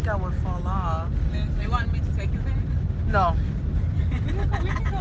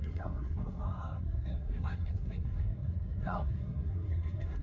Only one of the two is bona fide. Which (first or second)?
first